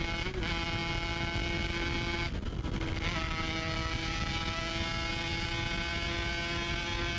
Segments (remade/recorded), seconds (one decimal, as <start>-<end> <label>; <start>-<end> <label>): 0.0-7.2 recorded